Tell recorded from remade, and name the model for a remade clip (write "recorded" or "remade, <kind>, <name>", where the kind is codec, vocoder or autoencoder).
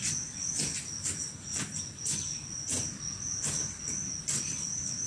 recorded